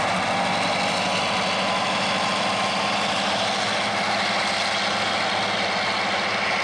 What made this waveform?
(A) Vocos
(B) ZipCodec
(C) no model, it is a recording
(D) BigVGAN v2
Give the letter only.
C